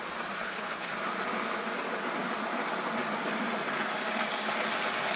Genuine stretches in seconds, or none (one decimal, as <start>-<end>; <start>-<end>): 0.0-0.4; 0.9-5.2